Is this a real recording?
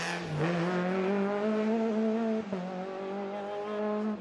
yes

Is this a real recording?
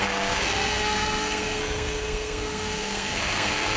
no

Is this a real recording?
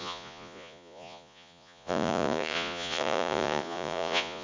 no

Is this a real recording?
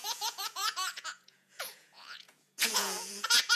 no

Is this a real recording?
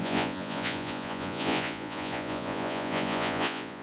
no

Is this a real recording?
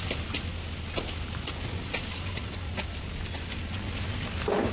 yes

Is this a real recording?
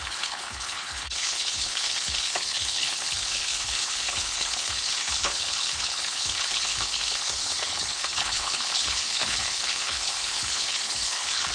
no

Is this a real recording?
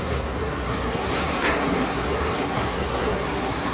no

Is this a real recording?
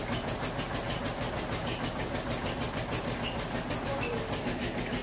yes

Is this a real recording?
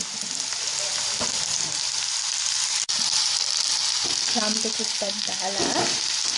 no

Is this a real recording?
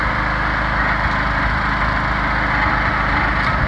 yes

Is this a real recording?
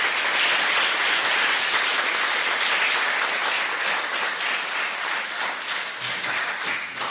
yes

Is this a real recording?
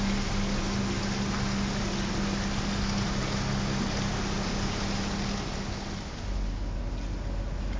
yes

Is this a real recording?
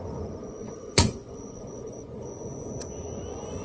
no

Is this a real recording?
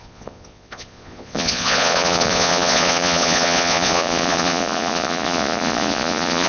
no